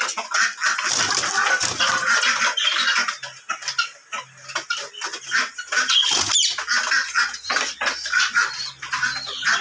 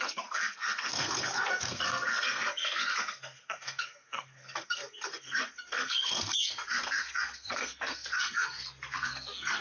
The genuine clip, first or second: first